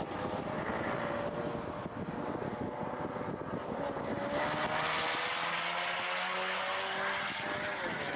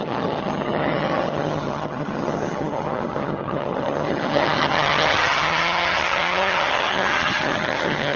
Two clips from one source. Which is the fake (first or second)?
second